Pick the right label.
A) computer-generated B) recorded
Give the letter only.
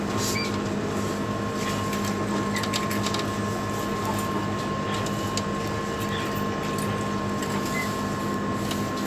B